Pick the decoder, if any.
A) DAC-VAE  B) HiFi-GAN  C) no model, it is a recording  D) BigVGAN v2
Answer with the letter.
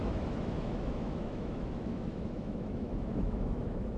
A